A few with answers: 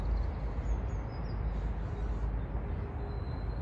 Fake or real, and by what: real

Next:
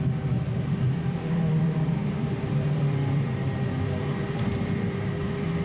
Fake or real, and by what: fake, vocoder, BigVGAN v2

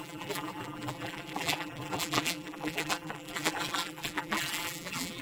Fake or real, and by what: fake, vocoder, BigVGAN v2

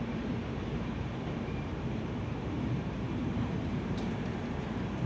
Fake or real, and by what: fake, vocoder, BigVGAN v2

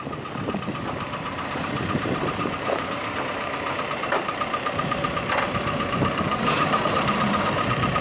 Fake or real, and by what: fake, vocoder, BigVGAN v2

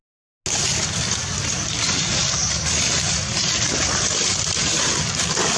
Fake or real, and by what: real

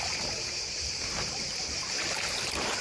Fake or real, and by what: fake, vocoder, BigVGAN v2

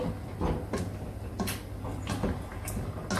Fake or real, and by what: real